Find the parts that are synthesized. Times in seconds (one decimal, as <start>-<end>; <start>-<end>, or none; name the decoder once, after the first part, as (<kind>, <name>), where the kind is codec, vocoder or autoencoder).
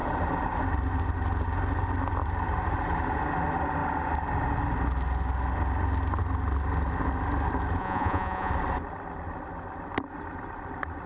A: 7.8-8.5 (vocoder, Vocos)